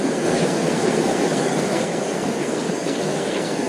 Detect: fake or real fake